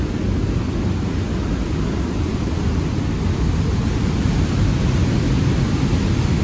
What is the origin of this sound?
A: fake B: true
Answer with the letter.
B